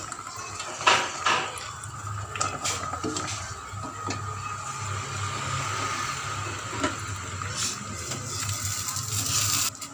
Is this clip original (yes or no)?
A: yes